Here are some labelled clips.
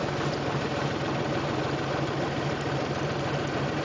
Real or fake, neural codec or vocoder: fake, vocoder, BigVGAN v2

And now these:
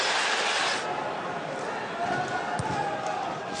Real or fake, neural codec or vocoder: real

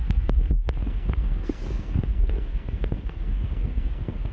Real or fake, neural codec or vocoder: fake, codec, SNAC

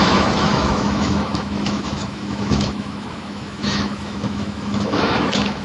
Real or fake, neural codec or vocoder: fake, autoencoder, DAC-VAE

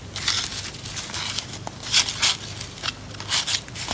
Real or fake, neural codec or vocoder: real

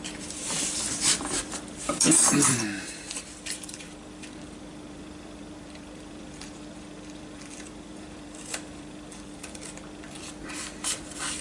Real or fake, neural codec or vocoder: fake, vocoder, BigVGAN v2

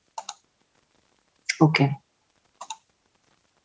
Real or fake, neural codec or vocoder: real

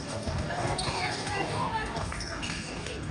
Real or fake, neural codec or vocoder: fake, codec, DAC